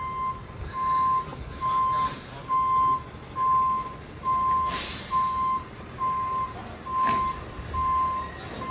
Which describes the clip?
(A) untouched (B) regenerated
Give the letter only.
A